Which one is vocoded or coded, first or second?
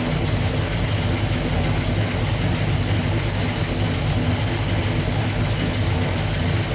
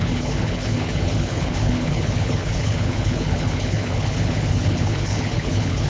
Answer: second